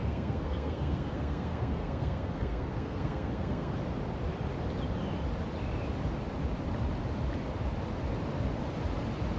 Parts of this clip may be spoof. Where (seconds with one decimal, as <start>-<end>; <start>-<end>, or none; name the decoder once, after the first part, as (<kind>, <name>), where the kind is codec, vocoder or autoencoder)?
0.0-3.7 (codec, SNAC)